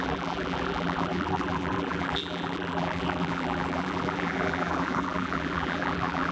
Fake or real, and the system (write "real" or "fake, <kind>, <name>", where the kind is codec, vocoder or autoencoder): fake, vocoder, BigVGAN v2